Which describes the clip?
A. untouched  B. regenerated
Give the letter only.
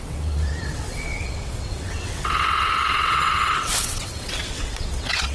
B